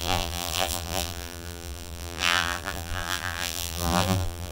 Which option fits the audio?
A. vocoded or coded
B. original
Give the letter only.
A